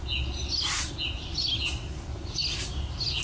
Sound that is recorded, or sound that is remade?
recorded